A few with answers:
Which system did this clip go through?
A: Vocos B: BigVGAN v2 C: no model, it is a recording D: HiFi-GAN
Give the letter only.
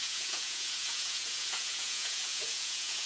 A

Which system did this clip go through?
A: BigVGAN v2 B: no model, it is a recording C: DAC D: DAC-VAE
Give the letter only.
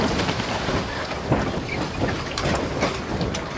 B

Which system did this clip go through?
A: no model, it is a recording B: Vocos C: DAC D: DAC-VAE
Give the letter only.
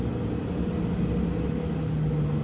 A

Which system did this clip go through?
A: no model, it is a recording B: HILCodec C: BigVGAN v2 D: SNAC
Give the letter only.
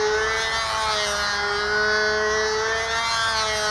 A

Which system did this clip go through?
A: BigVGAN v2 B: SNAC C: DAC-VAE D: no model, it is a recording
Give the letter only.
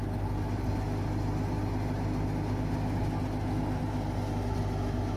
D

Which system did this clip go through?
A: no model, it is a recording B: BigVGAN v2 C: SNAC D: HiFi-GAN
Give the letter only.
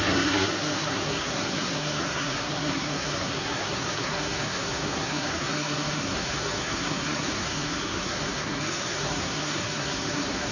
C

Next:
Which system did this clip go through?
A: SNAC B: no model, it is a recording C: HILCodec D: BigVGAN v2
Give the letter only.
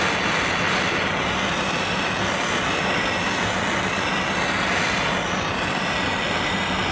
B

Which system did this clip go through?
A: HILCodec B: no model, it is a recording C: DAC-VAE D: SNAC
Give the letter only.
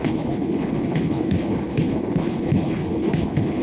A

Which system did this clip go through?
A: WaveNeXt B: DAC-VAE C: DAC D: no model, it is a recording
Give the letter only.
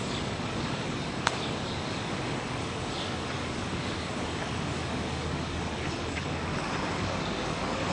C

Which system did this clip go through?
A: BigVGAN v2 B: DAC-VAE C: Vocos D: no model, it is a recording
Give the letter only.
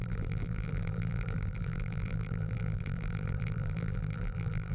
A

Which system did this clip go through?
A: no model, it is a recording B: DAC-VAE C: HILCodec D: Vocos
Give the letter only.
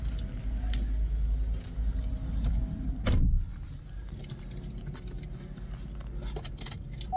A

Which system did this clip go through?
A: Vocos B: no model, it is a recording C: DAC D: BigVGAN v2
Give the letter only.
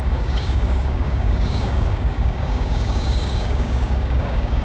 C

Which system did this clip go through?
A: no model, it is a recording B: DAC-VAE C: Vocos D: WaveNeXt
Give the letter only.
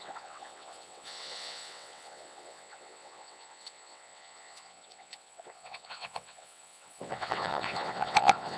D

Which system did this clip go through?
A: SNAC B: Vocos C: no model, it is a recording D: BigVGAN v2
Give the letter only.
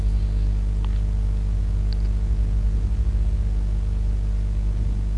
C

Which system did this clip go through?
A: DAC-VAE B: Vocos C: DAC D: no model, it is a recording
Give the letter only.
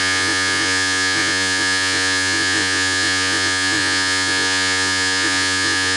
B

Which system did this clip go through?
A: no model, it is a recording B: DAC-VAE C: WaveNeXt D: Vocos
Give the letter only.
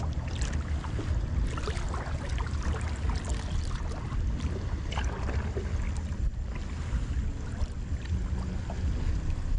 A